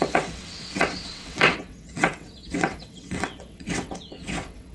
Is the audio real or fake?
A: fake